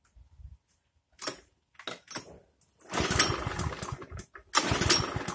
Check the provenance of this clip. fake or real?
real